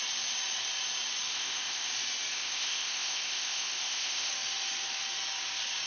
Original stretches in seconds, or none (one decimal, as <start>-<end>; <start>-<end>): 0.0-1.3; 1.9-2.3; 4.3-5.9